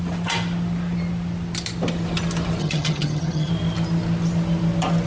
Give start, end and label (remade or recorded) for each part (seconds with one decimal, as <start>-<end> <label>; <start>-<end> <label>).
0.0-2.6 recorded; 2.6-3.5 remade; 3.5-5.1 recorded